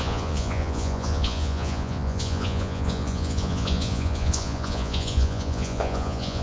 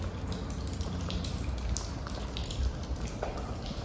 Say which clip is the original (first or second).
second